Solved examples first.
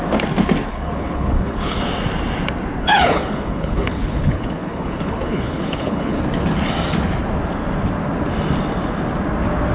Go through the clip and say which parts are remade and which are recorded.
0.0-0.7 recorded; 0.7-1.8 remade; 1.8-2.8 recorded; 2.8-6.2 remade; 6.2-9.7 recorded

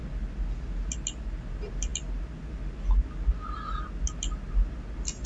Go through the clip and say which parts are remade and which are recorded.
0.0-5.3 recorded

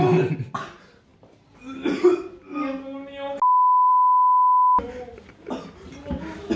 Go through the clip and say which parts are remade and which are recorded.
0.0-6.6 recorded

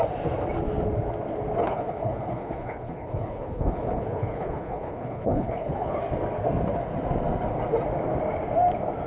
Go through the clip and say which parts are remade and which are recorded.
0.0-1.6 recorded; 1.6-6.0 remade; 6.0-9.1 recorded

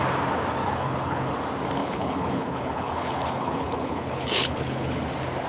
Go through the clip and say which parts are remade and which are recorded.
0.0-0.6 recorded; 0.6-1.3 remade; 1.3-1.8 recorded; 1.8-5.0 remade; 5.0-5.5 recorded

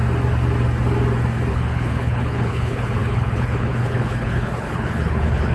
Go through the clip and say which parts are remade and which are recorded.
0.0-1.5 recorded; 1.5-5.5 remade

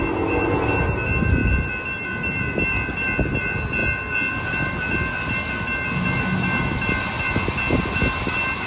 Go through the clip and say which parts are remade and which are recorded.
0.0-8.7 recorded